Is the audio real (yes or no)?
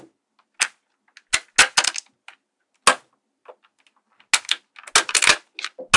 yes